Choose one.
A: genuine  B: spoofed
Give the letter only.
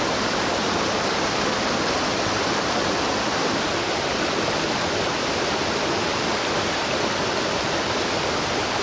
A